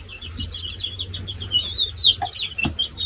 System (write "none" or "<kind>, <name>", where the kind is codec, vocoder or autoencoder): none